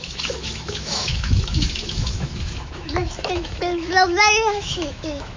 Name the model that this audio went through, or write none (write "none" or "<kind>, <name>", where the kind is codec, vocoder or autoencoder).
autoencoder, DAC-VAE